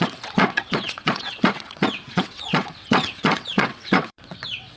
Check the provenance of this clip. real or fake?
fake